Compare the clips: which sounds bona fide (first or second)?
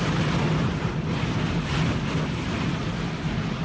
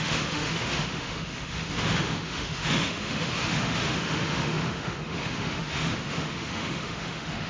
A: first